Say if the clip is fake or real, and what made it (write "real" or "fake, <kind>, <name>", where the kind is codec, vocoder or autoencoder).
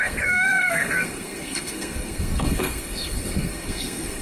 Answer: fake, codec, SNAC